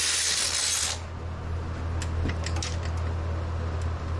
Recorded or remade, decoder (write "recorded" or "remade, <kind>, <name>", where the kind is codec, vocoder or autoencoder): recorded